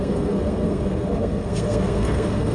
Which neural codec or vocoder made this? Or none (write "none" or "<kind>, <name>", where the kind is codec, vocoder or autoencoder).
codec, SNAC